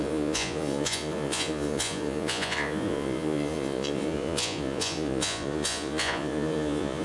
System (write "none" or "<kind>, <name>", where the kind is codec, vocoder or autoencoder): vocoder, Vocos